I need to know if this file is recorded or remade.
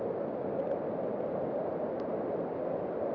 recorded